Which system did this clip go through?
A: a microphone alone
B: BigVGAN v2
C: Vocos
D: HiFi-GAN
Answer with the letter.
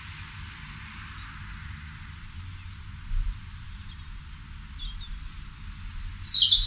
A